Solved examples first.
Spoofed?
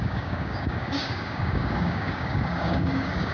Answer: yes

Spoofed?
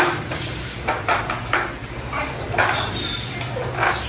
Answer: no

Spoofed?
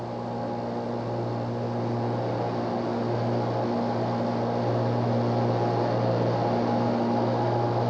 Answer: no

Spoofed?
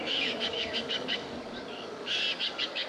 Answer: yes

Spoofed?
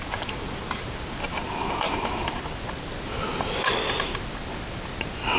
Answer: no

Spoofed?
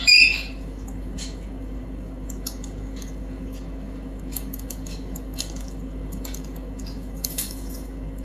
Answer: yes